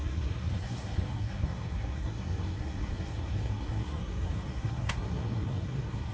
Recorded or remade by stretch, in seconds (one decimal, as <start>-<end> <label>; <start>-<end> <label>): 0.0-6.1 remade